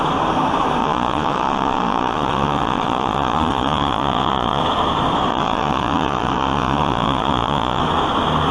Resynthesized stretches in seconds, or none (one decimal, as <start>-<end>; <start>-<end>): 0.8-4.6; 5.3-7.8

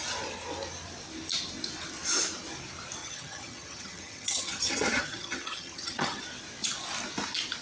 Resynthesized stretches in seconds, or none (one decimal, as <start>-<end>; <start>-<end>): 3.0-6.2